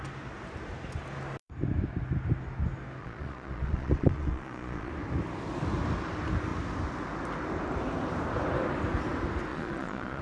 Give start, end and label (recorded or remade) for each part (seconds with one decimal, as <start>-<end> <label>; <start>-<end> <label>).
0.0-3.0 recorded; 3.0-4.9 remade; 4.9-9.5 recorded; 9.5-10.2 remade